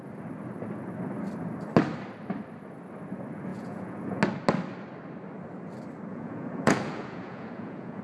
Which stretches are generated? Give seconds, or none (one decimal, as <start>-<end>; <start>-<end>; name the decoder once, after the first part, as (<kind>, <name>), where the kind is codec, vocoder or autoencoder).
3.5-4.2 (vocoder, Vocos); 6.1-8.0